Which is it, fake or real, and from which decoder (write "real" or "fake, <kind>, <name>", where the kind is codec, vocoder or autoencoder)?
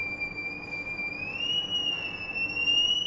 real